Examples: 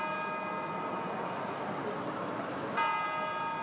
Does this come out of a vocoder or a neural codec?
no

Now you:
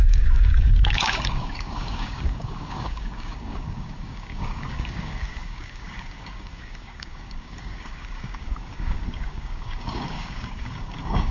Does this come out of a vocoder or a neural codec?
yes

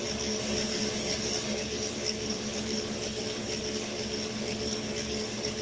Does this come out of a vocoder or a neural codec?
yes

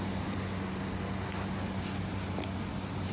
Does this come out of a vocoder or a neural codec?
no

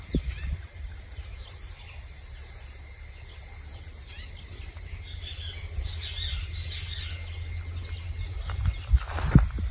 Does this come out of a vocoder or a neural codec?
no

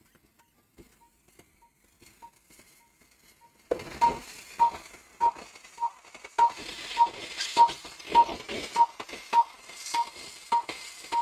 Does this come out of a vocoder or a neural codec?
no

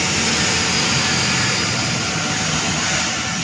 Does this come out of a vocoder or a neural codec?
no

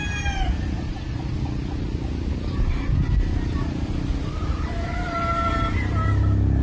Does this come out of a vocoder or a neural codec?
no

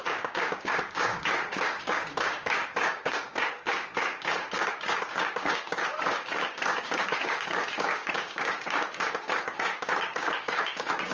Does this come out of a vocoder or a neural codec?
yes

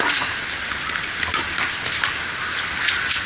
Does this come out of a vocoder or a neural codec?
no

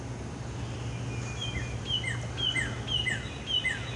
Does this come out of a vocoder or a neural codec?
no